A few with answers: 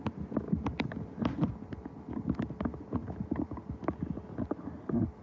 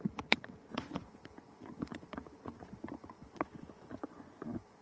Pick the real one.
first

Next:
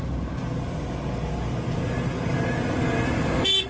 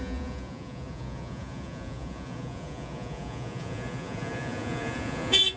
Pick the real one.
first